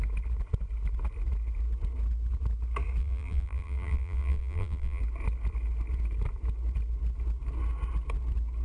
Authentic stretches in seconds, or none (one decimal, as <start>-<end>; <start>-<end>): 0.0-3.0; 5.0-8.6